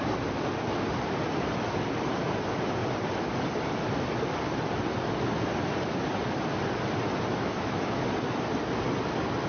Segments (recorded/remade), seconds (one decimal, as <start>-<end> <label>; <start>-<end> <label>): 0.0-7.3 recorded; 7.3-8.1 remade; 8.1-9.5 recorded